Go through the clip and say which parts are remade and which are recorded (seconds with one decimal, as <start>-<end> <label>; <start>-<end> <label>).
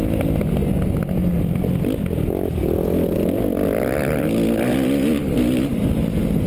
0.0-6.5 recorded